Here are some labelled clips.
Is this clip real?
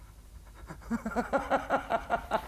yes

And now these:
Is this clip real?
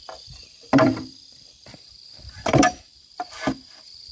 no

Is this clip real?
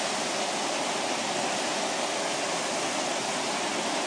yes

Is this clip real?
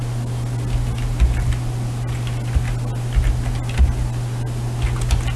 yes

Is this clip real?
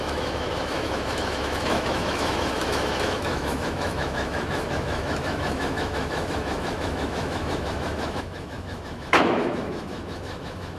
no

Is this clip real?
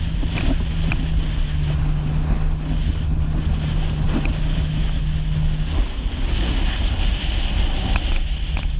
yes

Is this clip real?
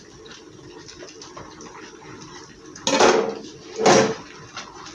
yes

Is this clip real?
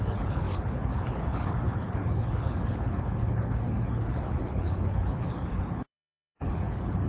no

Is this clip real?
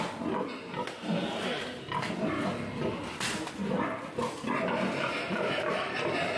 yes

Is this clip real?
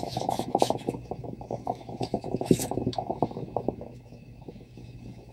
no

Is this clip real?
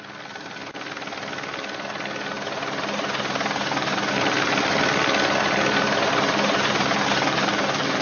yes